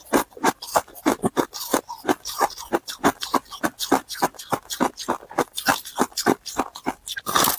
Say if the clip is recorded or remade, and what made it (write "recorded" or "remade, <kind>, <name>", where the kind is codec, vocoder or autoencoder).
remade, vocoder, BigVGAN v2